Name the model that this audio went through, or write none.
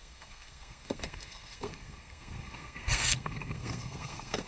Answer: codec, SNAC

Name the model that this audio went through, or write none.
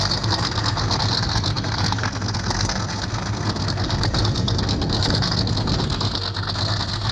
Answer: codec, SNAC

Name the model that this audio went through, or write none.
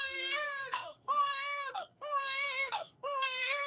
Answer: codec, SNAC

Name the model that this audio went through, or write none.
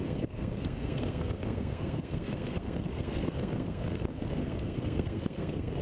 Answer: codec, SNAC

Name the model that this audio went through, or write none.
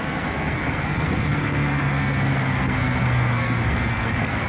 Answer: codec, SNAC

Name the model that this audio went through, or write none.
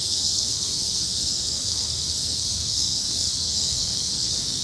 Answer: codec, SNAC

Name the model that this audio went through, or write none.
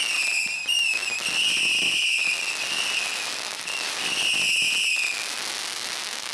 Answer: none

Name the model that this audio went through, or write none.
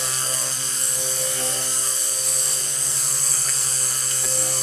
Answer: codec, SNAC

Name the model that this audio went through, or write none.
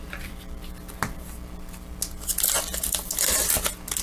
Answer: none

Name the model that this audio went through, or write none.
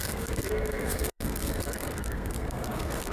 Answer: codec, SNAC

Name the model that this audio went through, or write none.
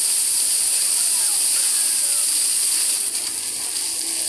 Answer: none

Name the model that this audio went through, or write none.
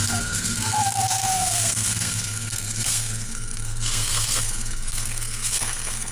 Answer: codec, SNAC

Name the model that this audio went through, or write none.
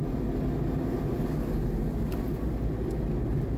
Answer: none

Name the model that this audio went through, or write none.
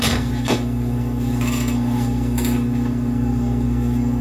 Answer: codec, SNAC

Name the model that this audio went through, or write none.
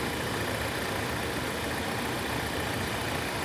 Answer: none